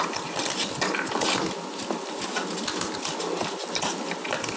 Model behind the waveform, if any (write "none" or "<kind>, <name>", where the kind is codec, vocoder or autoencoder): none